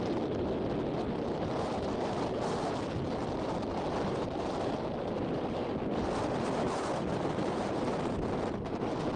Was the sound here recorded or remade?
recorded